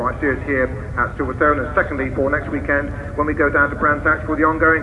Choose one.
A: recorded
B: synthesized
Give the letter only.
A